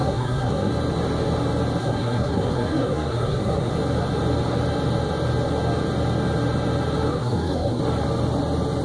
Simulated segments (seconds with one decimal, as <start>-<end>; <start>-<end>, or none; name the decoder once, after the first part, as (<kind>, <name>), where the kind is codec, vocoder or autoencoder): 0.0-0.7 (codec, SNAC); 1.8-3.7; 7.1-7.8